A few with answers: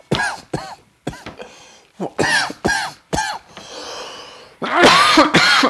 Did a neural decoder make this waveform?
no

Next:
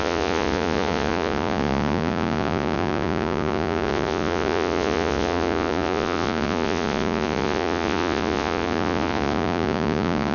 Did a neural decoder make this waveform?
yes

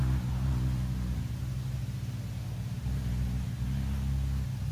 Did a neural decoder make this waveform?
no